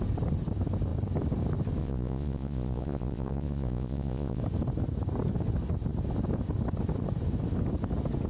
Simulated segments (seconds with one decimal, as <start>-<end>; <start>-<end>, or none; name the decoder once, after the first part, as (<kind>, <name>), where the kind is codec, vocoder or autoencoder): 1.8-4.4 (vocoder, Vocos)